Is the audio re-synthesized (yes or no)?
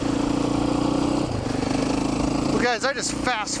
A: no